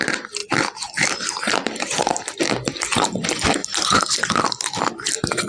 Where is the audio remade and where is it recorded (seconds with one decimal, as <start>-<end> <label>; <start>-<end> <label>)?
0.0-5.5 recorded